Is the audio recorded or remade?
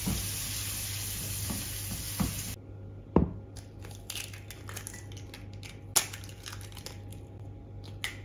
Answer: recorded